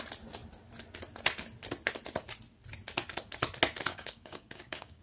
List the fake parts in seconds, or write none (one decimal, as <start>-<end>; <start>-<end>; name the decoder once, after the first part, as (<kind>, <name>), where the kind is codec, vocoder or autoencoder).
3.9-5.0 (codec, DAC)